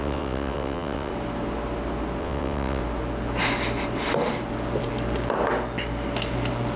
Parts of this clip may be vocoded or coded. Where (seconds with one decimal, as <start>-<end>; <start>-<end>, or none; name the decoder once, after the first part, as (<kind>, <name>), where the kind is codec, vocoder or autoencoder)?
0.0-1.1 (vocoder, WaveNeXt); 2.2-2.8

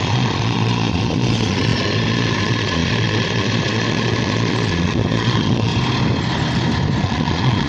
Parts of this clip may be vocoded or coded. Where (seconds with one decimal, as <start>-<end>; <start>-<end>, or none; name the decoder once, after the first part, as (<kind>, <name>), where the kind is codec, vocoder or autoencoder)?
0.0-5.7 (vocoder, Vocos); 7.0-7.7